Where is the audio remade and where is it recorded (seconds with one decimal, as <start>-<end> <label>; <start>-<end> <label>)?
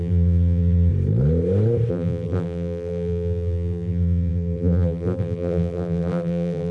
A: 0.0-0.9 remade; 0.9-1.9 recorded; 1.9-6.7 remade